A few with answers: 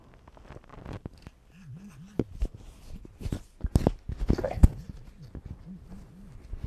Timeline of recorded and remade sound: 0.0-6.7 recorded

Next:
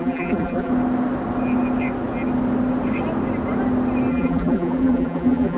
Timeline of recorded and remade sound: 0.0-0.7 remade; 0.7-4.1 recorded; 4.1-5.6 remade